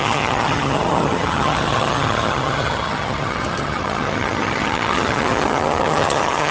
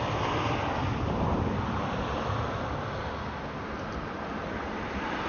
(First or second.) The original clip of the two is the second